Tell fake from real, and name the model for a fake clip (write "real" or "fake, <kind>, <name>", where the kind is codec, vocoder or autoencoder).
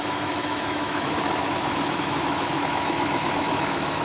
fake, autoencoder, DAC-VAE